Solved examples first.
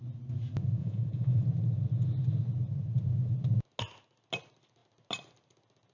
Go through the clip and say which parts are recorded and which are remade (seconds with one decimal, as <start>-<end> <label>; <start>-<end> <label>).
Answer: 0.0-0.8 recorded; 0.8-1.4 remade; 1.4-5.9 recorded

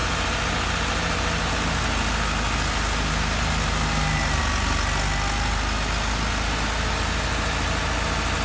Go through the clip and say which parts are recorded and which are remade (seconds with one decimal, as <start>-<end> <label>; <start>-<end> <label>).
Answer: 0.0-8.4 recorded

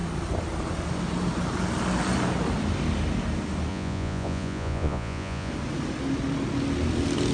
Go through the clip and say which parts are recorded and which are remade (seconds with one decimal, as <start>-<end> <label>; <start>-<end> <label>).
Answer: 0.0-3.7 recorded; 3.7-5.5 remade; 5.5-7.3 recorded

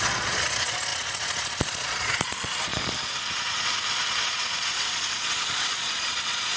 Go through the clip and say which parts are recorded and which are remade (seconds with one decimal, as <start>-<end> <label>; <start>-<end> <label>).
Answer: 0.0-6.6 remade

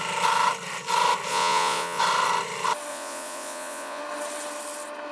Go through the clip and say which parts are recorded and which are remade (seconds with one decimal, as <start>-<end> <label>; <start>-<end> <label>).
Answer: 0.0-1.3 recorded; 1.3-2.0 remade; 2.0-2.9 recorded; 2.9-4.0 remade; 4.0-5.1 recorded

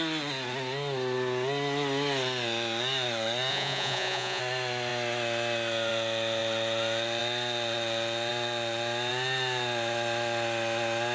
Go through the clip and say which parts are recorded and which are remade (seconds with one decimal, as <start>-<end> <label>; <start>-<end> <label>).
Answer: 0.0-3.5 recorded; 3.5-4.4 remade; 4.4-11.1 recorded